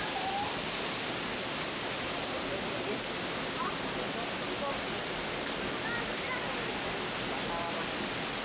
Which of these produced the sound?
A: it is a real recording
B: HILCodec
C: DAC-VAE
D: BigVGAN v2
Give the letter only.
A